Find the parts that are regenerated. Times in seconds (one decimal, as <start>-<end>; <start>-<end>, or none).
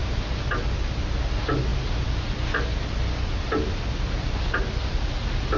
none